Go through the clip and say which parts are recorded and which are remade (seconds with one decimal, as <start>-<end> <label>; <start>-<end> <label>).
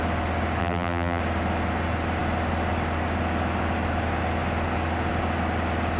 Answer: 0.0-0.6 recorded; 0.6-1.2 remade; 1.2-6.0 recorded